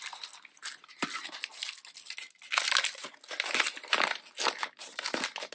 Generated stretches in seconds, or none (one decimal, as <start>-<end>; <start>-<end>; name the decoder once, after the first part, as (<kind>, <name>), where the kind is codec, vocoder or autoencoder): none